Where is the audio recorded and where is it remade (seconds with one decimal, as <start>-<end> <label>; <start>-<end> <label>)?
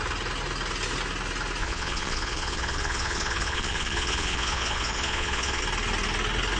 0.0-1.6 recorded; 1.6-5.6 remade; 5.6-6.6 recorded